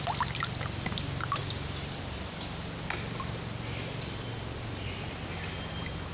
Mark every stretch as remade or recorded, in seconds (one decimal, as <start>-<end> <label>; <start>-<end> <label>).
0.0-6.1 recorded